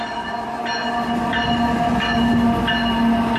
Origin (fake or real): real